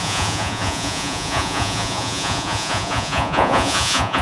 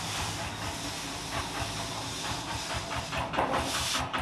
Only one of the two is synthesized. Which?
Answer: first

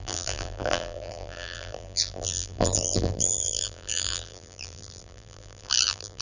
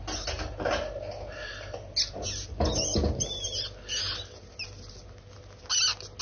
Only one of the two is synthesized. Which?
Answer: first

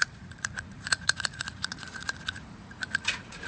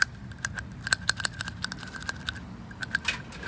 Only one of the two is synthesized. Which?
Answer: first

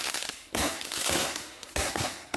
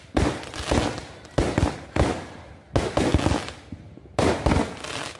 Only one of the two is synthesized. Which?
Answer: first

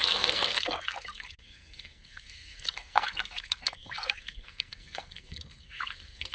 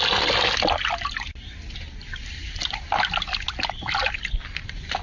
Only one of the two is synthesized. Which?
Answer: first